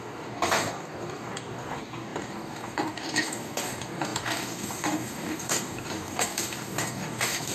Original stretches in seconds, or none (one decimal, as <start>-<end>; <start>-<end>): none